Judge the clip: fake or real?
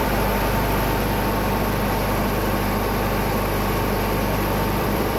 fake